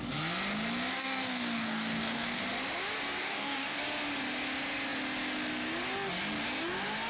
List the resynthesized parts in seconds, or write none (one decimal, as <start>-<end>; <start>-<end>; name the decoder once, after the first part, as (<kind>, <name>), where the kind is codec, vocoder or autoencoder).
0.9-2.4 (codec, DAC); 3.2-3.8